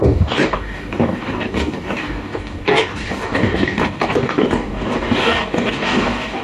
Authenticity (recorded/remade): remade